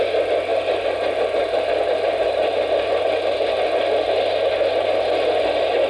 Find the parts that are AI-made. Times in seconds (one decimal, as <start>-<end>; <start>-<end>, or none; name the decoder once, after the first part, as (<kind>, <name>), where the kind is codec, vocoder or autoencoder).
none